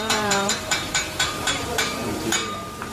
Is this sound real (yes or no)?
no